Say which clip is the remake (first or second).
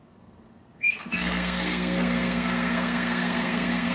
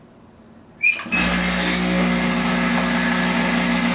first